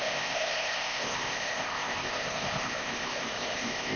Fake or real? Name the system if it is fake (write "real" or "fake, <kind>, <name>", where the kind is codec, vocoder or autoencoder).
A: fake, codec, ZipCodec